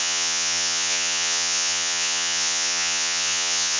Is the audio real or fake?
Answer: fake